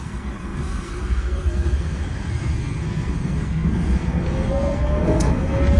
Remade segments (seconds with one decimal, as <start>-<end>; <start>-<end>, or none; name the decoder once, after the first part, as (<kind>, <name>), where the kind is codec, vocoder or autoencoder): 0.0-5.8 (codec, SNAC)